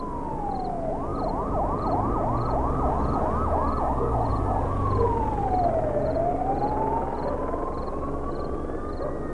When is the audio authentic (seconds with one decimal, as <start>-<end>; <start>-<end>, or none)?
0.0-1.1; 2.1-9.3